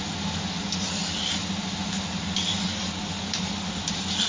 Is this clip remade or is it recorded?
recorded